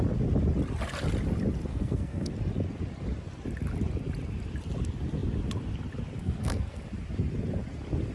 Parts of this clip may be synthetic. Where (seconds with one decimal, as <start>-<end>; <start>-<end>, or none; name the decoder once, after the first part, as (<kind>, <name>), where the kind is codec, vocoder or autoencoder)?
1.7-2.3 (codec, SNAC); 6.2-6.8